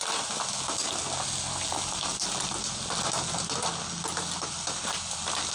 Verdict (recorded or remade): recorded